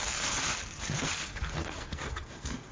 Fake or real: fake